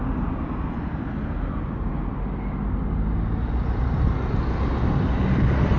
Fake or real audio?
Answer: real